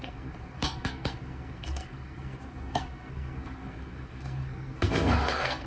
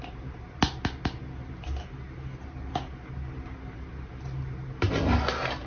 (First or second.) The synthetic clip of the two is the first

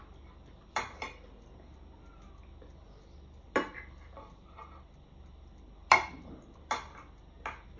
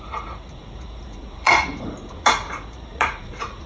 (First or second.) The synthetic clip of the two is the second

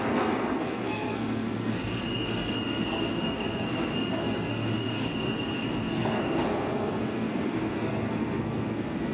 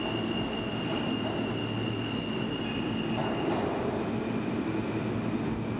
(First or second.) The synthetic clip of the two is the first